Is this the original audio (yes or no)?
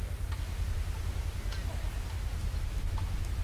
yes